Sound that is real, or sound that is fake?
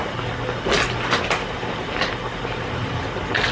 real